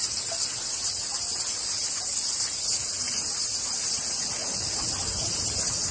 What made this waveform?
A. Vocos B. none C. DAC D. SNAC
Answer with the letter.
B